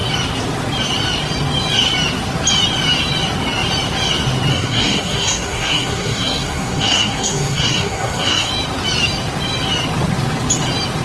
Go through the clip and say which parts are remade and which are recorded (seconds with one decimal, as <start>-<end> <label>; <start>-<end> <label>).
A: 0.0-4.5 recorded; 4.5-8.5 remade; 8.5-11.0 recorded